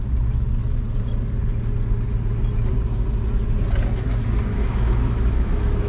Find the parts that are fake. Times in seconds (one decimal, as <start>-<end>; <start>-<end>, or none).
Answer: 4.5-5.9